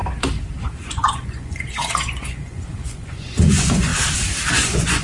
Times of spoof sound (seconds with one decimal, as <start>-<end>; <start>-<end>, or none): 0.6-3.9; 4.5-5.0